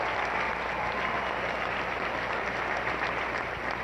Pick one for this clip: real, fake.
real